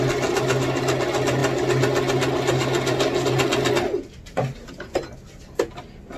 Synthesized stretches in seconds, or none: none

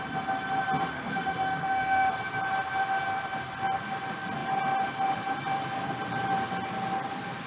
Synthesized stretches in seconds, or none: 0.8-2.1 (autoencoder, DAC-VAE)

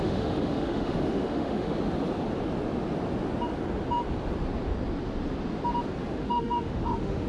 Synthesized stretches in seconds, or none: 0.0-1.7 (autoencoder, DAC-VAE); 6.1-7.3

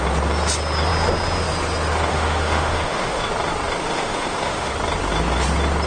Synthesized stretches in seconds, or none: 2.1-3.2 (autoencoder, DAC-VAE); 3.8-4.7

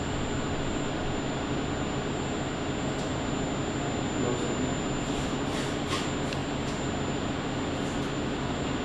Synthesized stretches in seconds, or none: none

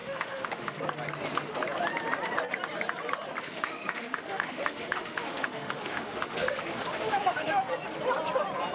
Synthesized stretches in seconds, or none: 0.0-0.8 (autoencoder, DAC-VAE); 3.4-7.7